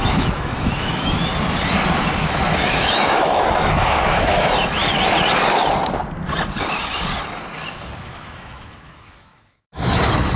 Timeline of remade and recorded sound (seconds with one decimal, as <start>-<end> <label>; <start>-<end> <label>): 0.0-1.3 remade; 1.3-2.2 recorded; 2.2-4.8 remade; 4.8-8.0 recorded; 8.0-10.4 remade